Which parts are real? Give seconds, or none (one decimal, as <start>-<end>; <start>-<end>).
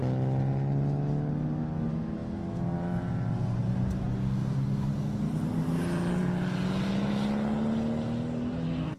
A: 0.0-9.0